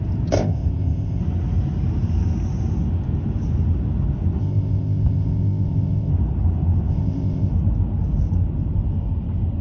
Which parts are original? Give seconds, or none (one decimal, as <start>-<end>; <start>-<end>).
0.0-0.4; 1.2-4.4; 6.1-6.9; 7.5-9.6